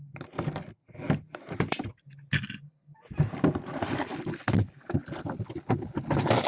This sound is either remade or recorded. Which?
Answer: recorded